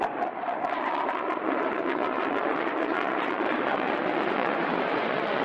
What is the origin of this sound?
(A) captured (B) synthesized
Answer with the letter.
B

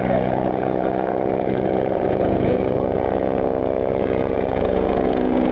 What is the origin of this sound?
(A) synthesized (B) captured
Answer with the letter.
A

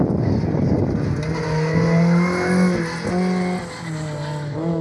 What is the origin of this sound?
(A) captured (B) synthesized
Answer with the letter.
A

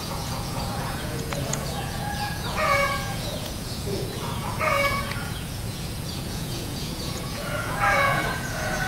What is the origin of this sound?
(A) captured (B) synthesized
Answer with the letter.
B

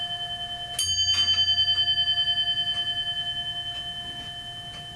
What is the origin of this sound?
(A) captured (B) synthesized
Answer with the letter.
A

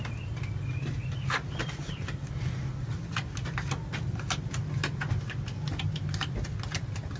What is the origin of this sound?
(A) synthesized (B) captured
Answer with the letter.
B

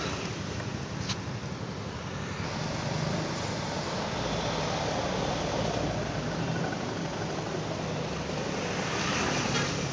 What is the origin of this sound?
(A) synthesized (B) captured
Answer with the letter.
B